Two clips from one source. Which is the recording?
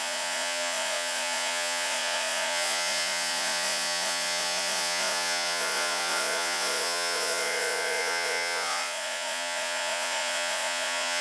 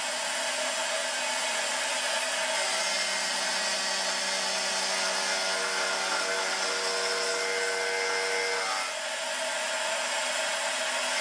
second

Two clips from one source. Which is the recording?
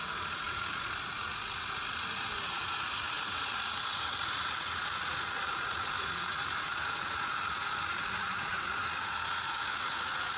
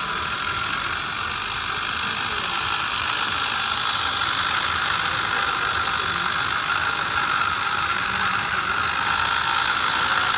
second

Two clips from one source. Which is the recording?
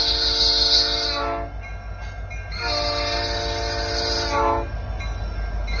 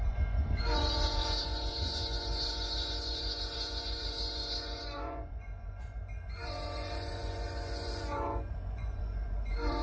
first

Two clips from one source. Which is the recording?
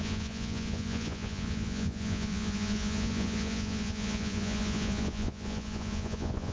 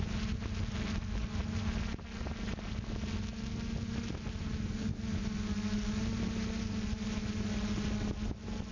second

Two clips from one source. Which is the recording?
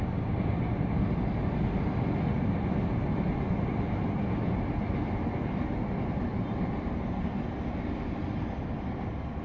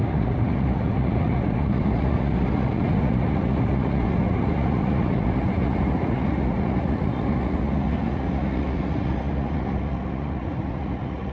first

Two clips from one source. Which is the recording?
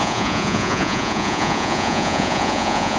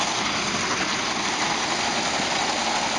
second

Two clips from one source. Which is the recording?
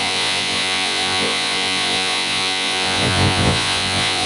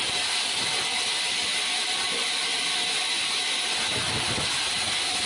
second